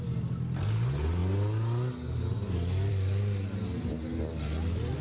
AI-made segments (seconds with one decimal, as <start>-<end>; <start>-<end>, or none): none